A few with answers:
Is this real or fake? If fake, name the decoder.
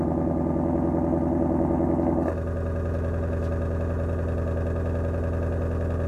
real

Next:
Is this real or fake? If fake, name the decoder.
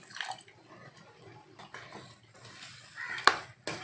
real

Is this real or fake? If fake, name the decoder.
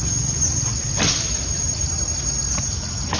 real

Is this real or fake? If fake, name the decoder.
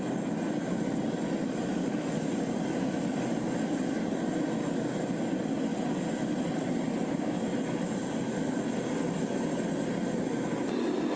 real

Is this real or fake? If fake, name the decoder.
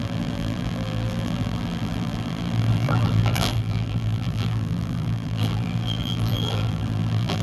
fake, vocoder, BigVGAN v2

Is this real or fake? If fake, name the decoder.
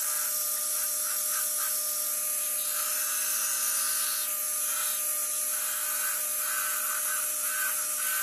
real